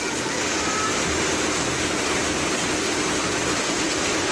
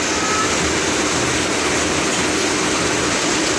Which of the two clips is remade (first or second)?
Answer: first